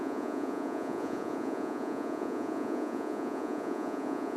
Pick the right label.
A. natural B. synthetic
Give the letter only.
B